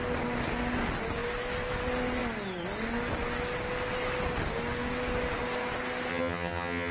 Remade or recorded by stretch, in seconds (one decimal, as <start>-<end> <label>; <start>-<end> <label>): 0.0-6.1 recorded; 6.1-6.9 remade